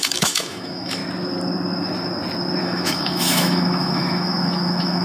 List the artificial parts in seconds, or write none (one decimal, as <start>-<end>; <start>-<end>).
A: 0.0-1.0; 2.6-5.0